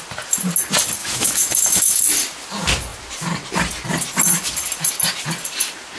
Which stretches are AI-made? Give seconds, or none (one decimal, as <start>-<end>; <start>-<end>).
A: 1.0-2.0